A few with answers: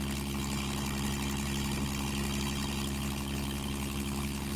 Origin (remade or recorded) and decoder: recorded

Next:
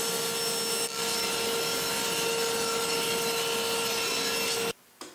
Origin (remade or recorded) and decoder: recorded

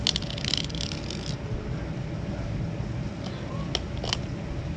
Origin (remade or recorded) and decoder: recorded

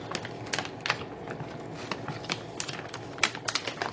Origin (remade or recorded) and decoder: recorded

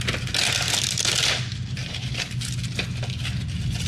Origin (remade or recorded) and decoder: recorded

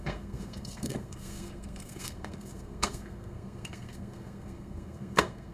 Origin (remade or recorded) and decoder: remade, codec, SNAC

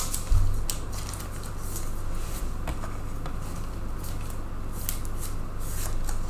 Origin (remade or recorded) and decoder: recorded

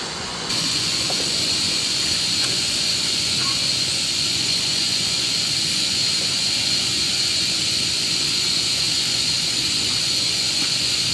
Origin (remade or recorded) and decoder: remade, vocoder, Vocos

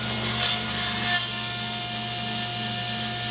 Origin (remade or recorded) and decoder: recorded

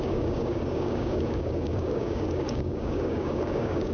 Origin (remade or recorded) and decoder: remade, codec, DAC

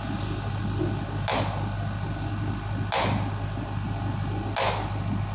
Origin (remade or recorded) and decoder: recorded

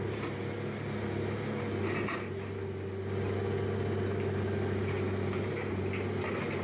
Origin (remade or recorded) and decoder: recorded